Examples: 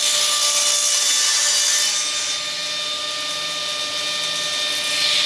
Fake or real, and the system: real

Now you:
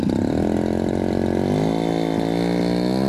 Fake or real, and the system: real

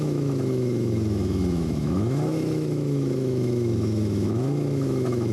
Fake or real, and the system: fake, autoencoder, DAC-VAE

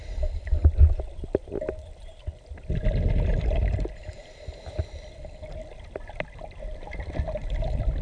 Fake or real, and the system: real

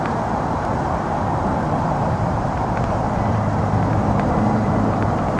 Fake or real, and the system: fake, vocoder, BigVGAN v2